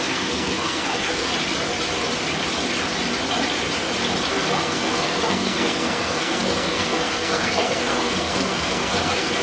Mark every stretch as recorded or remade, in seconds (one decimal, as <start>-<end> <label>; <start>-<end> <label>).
0.0-1.3 remade; 1.3-4.3 recorded; 4.3-9.4 remade